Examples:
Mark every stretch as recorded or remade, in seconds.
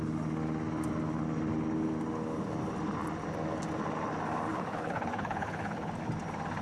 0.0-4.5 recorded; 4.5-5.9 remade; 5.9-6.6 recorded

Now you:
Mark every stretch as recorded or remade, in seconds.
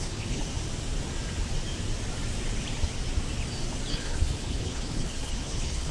0.0-0.4 remade; 0.4-3.9 recorded; 3.9-5.9 remade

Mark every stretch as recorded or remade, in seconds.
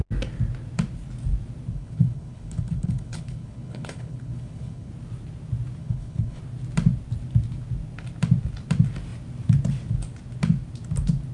0.0-1.7 recorded; 1.7-4.9 remade; 4.9-5.8 recorded; 5.8-6.4 remade; 6.4-11.3 recorded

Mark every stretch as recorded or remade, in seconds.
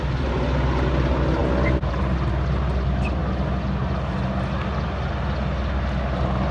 0.0-6.5 recorded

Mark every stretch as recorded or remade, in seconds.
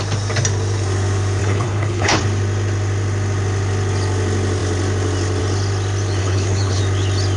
0.0-1.4 recorded; 1.4-2.2 remade; 2.2-6.2 recorded; 6.2-6.8 remade; 6.8-7.4 recorded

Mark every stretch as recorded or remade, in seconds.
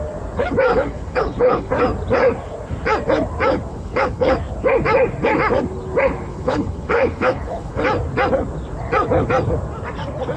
0.0-0.7 recorded; 0.7-1.7 remade; 1.7-3.7 recorded; 3.7-4.3 remade; 4.3-6.3 recorded; 6.3-7.8 remade; 7.8-10.4 recorded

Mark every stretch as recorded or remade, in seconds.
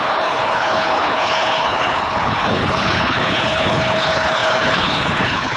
0.0-5.6 remade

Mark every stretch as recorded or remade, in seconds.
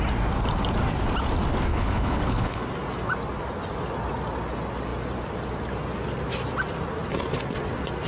0.0-1.7 recorded; 1.7-2.7 remade; 2.7-8.1 recorded